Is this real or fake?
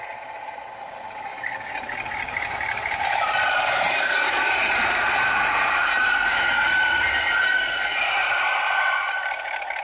fake